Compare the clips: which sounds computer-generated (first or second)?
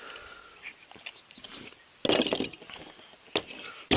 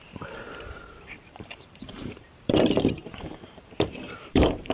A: second